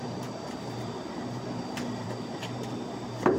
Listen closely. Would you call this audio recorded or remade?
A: remade